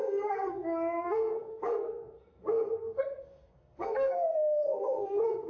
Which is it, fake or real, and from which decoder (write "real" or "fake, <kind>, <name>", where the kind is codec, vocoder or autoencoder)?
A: fake, codec, SNAC